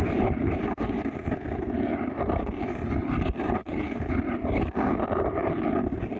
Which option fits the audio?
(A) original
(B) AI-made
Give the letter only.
B